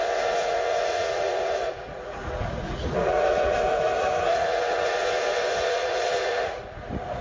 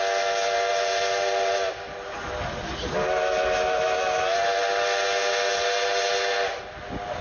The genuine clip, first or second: second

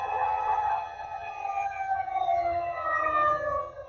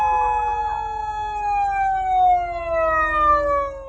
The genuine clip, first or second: second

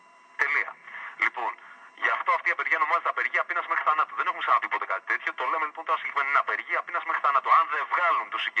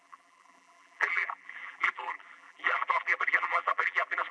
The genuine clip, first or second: first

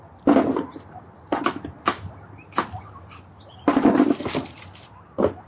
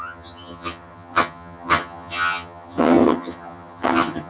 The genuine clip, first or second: first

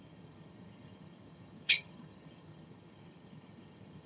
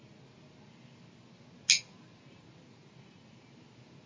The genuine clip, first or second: second